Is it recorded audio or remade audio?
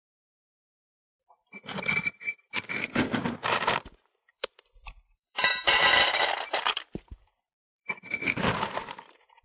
remade